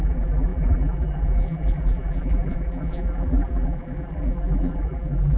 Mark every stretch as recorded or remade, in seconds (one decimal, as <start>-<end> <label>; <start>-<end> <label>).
0.0-5.4 remade